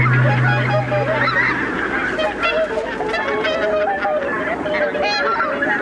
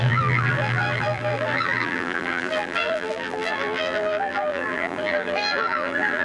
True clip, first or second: first